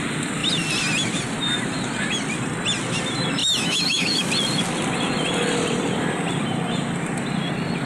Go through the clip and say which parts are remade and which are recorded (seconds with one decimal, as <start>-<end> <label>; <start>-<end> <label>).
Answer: 0.0-3.4 recorded; 3.4-4.3 remade; 4.3-7.9 recorded